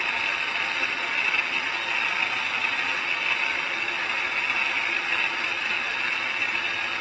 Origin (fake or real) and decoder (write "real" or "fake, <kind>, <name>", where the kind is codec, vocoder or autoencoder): real